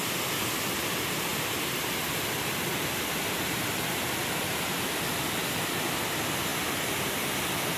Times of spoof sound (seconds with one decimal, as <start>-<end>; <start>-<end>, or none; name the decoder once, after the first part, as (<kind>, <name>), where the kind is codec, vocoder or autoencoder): 0.0-1.3 (vocoder, BigVGAN v2); 3.6-6.5